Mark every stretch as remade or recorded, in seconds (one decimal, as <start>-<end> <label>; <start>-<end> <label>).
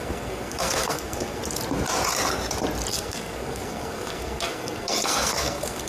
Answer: 0.0-1.4 remade; 1.4-2.9 recorded; 2.9-5.9 remade